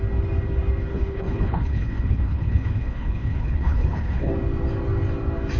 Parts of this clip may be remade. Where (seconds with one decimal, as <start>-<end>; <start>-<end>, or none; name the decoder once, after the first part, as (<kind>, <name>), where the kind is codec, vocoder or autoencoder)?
0.9-4.3 (codec, HILCodec)

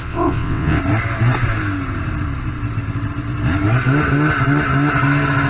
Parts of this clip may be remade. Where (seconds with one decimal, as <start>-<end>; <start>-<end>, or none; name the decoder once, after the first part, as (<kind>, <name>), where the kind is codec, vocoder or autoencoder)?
0.0-0.8 (vocoder, WaveNeXt)

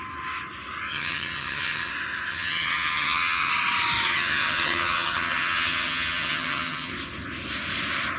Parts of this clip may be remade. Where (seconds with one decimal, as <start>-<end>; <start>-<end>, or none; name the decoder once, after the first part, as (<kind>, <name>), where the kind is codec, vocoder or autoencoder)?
0.9-1.9 (vocoder, HiFi-GAN); 2.3-3.5; 4.1-6.9

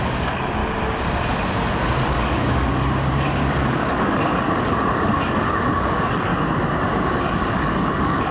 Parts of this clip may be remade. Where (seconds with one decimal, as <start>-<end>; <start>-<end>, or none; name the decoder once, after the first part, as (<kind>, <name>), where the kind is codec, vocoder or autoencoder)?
0.0-0.6 (codec, DAC); 1.7-6.3; 7.2-8.3

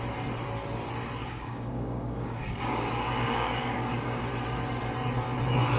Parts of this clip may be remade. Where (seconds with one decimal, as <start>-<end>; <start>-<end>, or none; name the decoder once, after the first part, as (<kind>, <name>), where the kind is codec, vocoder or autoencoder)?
1.2-4.2 (codec, DAC)

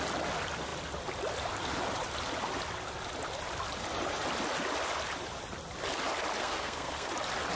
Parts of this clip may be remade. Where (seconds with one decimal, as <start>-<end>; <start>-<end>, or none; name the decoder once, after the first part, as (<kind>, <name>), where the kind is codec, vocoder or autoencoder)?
6.4-7.1 (codec, SNAC)

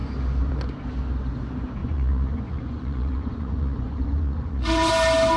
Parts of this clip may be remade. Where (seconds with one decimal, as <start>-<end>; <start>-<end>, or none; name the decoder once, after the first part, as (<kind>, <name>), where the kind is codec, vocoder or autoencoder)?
1.8-4.9 (vocoder, Vocos)